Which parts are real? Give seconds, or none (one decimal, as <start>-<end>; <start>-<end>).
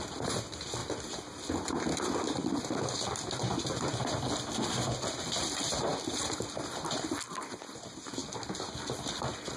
0.0-9.6